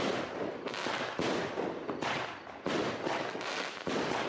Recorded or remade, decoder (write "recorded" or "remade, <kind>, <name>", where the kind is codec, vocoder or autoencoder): recorded